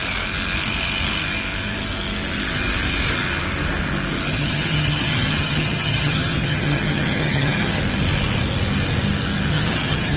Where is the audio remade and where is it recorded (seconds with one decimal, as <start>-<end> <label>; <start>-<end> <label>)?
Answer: 0.0-4.3 recorded; 4.3-7.8 remade; 7.8-9.5 recorded; 9.5-10.2 remade